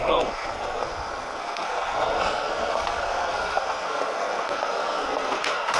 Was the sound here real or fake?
fake